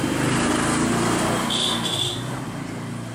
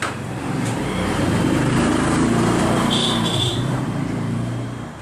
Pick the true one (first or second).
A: first